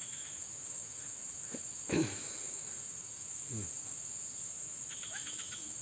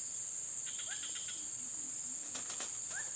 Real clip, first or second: second